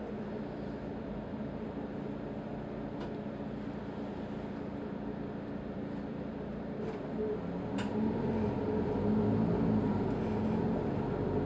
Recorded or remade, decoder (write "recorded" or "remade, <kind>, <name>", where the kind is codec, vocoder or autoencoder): recorded